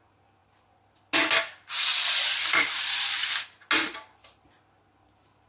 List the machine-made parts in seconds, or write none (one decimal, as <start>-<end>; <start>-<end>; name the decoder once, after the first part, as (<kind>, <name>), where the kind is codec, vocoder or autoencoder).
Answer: none